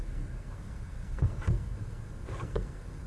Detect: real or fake fake